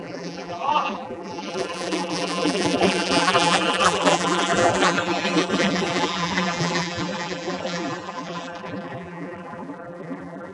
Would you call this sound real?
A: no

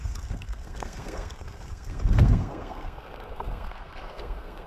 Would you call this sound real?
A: no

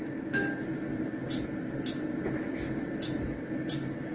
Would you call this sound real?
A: yes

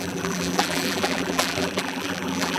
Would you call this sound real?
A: no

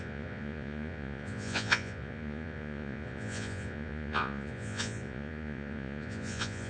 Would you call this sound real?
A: no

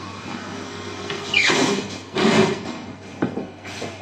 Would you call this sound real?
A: no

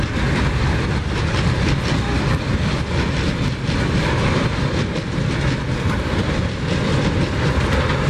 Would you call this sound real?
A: yes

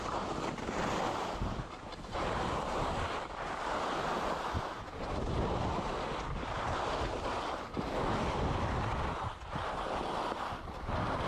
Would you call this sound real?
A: yes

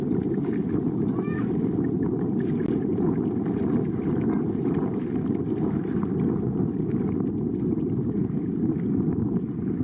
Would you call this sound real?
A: yes